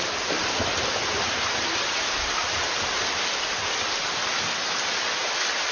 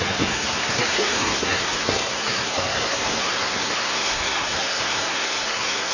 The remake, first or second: second